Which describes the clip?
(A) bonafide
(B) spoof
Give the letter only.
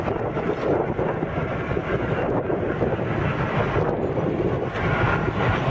A